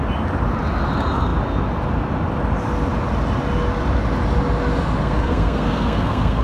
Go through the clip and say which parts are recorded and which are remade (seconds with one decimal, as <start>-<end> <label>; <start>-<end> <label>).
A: 0.0-5.0 recorded; 5.0-6.4 remade